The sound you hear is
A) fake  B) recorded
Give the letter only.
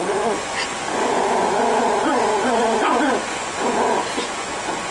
A